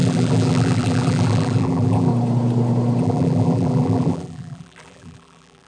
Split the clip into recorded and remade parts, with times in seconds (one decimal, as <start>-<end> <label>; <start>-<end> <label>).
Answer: 0.0-2.1 remade; 2.1-3.0 recorded; 3.0-5.7 remade